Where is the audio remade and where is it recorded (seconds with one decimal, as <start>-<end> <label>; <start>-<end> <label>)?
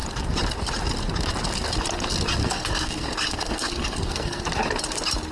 0.0-2.4 recorded; 2.4-4.4 remade; 4.4-5.3 recorded